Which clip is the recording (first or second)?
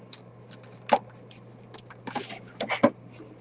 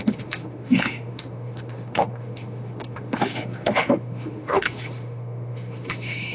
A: first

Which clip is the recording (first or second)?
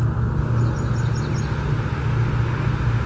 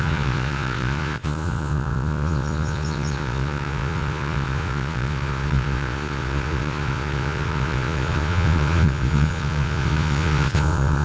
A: first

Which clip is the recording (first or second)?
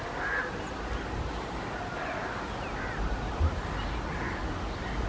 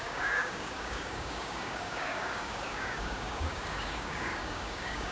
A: first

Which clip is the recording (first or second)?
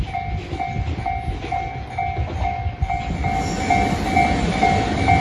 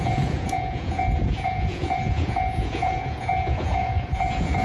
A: first